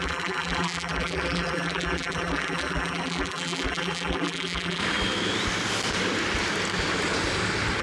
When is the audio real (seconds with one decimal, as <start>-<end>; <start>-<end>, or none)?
4.8-7.8